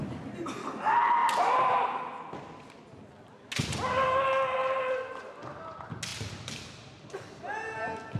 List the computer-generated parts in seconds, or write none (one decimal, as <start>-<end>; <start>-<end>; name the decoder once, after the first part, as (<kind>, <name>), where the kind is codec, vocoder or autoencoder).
none